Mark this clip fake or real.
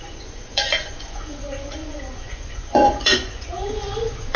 fake